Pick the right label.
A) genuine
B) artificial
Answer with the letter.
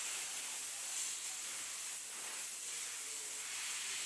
A